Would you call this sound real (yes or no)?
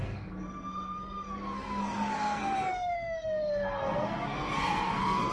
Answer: no